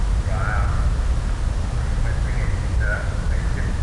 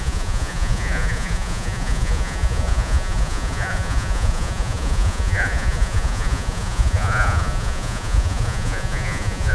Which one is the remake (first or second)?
second